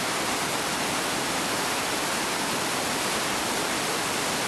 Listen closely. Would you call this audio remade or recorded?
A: recorded